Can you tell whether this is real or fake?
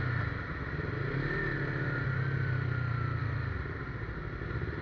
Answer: real